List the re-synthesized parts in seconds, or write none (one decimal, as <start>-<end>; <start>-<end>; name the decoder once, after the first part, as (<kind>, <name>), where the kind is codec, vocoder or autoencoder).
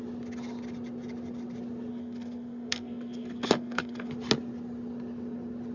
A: 1.9-4.1 (codec, SNAC)